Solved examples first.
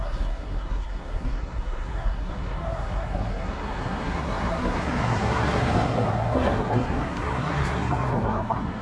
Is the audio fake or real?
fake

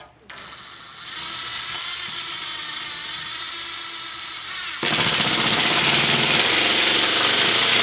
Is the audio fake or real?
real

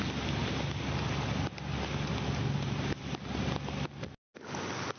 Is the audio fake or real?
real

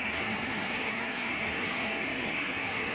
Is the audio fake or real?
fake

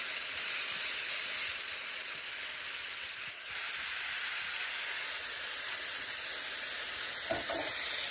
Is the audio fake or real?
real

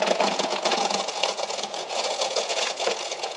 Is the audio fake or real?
fake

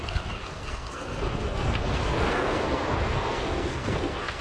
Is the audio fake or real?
fake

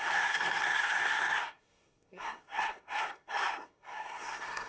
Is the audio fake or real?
fake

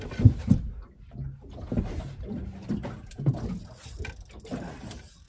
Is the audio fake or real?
real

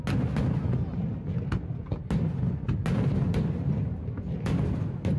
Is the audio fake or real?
real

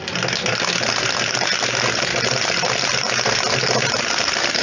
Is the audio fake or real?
real